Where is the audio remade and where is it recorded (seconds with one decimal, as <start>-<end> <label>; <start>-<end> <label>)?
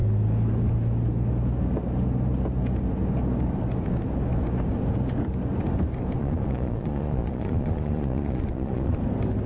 0.0-6.2 recorded; 6.2-9.0 remade; 9.0-9.5 recorded